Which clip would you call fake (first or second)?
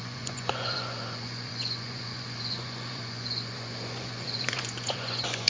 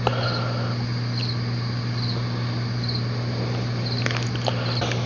first